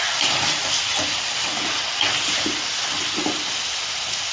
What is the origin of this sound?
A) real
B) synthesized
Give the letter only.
A